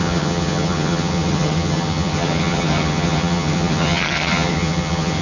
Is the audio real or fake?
fake